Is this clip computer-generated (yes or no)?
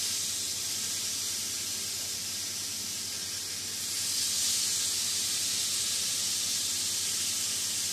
no